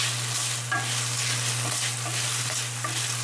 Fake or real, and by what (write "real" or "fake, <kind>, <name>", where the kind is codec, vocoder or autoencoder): real